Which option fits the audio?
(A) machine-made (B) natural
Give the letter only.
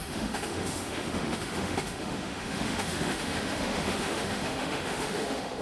A